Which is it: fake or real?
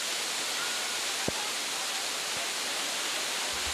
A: real